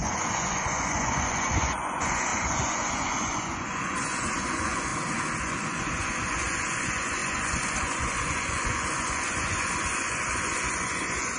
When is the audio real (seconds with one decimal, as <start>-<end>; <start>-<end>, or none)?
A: 4.9-5.4